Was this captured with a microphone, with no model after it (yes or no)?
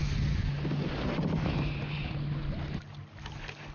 yes